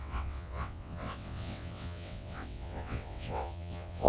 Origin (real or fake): fake